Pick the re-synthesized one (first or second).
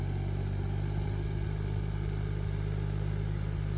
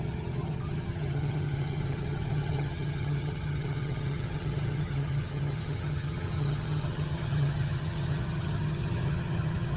second